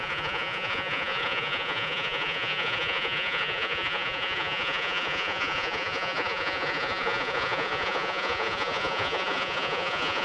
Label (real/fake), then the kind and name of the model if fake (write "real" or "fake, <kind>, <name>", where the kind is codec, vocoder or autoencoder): fake, vocoder, Vocos